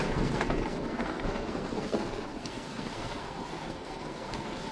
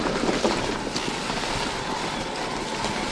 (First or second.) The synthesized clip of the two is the first